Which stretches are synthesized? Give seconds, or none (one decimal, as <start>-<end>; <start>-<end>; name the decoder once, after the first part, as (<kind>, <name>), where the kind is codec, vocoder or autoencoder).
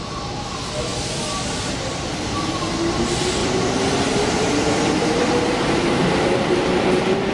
0.9-1.4 (vocoder, BigVGAN v2); 3.4-7.3